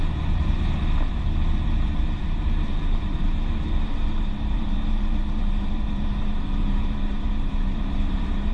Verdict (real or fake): fake